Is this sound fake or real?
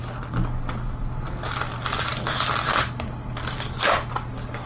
real